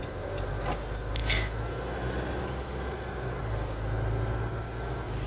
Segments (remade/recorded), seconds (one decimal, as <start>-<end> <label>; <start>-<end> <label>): 0.0-5.3 recorded